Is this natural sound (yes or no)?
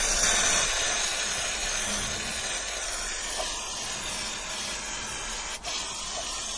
yes